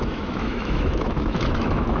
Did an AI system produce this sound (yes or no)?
yes